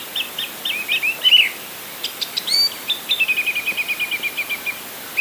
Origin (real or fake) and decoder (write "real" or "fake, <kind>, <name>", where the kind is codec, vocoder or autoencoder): real